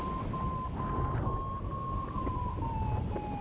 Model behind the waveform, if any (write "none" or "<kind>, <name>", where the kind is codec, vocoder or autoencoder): none